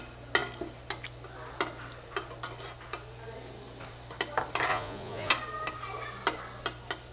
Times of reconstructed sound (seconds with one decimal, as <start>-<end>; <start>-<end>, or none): 4.7-5.3